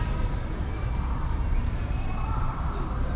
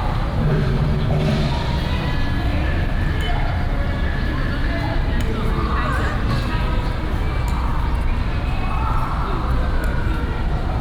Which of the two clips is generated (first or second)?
first